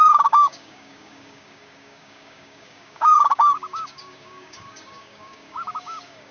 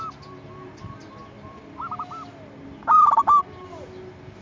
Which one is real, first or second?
second